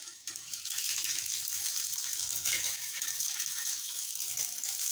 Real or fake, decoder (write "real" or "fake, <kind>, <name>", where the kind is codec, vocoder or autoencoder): fake, autoencoder, DAC-VAE